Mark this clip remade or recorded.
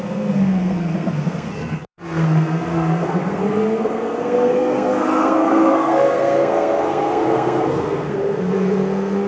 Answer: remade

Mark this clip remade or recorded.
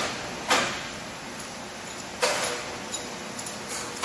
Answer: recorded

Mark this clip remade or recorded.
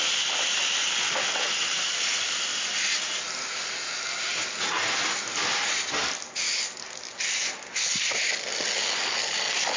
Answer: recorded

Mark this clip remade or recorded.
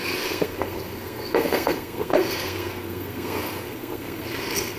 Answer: remade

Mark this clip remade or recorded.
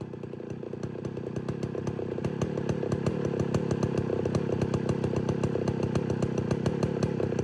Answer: recorded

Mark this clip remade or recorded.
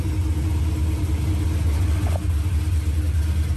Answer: recorded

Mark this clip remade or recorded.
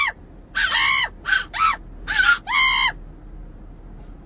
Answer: recorded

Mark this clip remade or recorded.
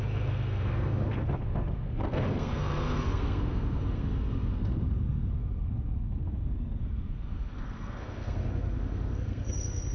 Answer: remade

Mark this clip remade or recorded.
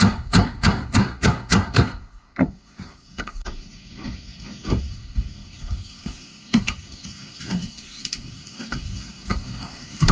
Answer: remade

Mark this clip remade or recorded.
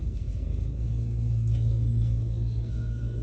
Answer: remade